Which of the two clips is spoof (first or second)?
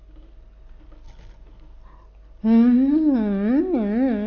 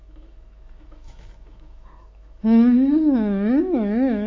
second